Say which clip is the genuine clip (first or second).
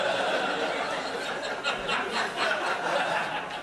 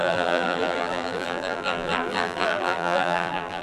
first